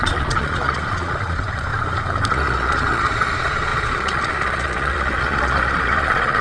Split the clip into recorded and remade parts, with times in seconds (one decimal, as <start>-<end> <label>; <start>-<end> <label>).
0.0-1.7 remade; 1.7-2.3 recorded; 2.3-6.4 remade